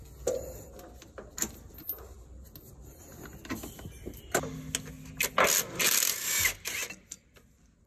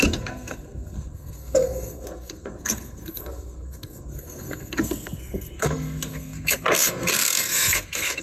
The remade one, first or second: second